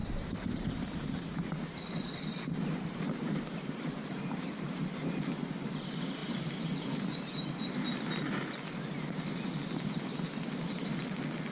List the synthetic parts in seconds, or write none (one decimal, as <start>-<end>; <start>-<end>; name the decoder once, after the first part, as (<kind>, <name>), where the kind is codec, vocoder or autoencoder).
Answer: 0.0-4.8 (vocoder, BigVGAN v2); 6.2-7.3